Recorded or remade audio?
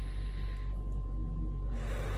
recorded